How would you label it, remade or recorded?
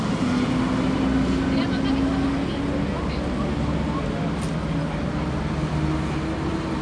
recorded